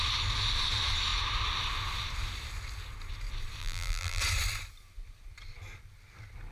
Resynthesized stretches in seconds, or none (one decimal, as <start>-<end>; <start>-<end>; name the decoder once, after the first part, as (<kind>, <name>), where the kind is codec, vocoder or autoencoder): 3.6-4.2 (vocoder, BigVGAN v2)